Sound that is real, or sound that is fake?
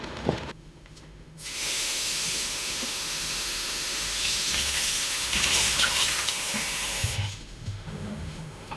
fake